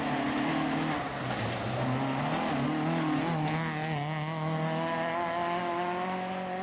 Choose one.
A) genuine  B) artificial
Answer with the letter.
A